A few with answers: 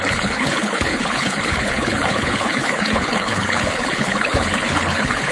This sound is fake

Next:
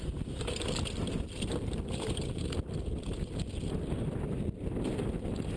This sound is real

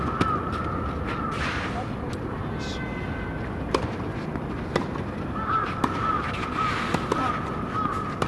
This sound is real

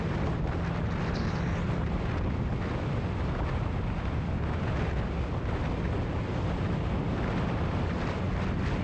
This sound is real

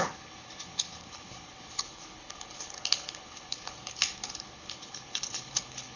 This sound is fake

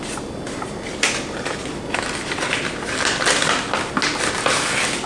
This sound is real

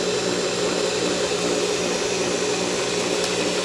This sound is real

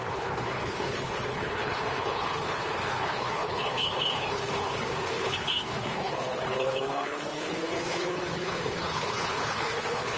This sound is fake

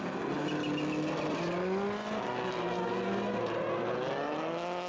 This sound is real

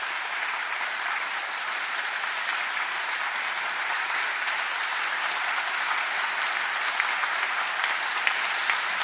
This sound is real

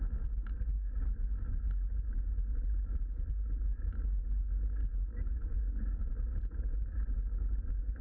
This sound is real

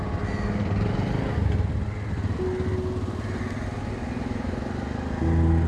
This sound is real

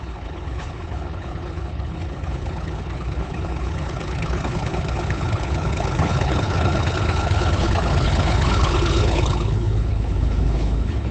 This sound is fake